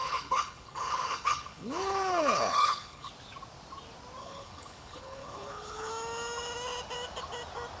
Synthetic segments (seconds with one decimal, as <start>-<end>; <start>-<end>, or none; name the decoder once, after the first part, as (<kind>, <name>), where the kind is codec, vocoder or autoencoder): 0.0-3.1 (codec, HILCodec); 4.2-5.9